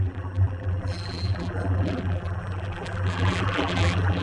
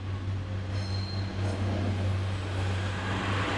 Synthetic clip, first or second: first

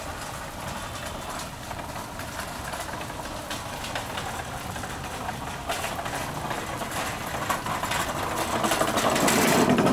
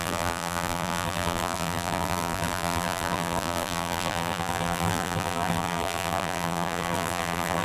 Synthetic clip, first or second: second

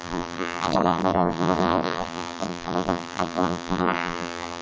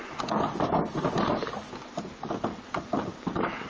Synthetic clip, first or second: first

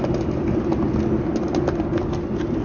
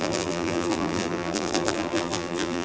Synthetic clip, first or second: second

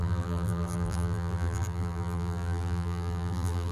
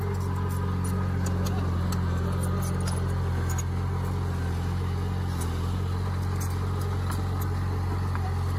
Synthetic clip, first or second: first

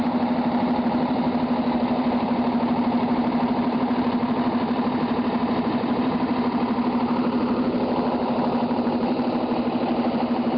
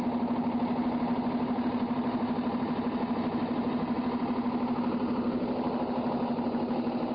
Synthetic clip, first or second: first